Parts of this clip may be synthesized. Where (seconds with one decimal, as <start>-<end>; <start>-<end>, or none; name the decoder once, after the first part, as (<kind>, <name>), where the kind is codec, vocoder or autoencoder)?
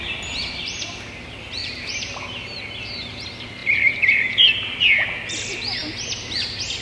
1.6-2.2 (vocoder, BigVGAN v2); 3.6-4.8